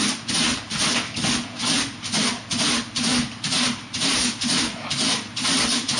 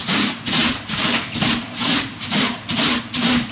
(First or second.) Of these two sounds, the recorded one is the first